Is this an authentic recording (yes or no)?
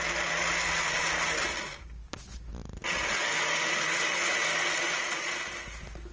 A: yes